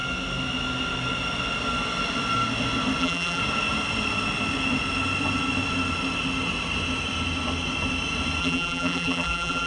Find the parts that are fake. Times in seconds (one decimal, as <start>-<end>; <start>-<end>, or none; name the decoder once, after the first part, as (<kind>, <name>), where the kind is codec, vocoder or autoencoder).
3.0-3.4 (vocoder, BigVGAN v2); 8.4-9.7